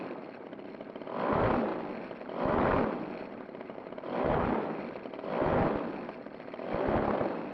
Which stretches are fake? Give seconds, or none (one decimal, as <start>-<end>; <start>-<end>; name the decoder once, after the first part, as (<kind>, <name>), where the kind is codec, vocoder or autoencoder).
3.2-4.8 (vocoder, BigVGAN v2)